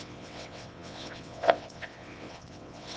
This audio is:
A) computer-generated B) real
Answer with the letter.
A